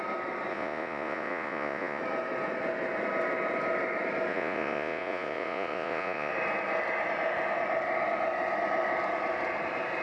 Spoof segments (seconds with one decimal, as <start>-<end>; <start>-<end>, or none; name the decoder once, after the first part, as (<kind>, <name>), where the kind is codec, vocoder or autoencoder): 0.5-2.0 (vocoder, Vocos); 4.3-6.3